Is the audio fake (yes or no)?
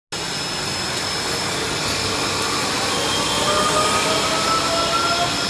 no